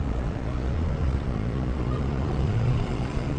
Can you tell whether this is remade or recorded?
remade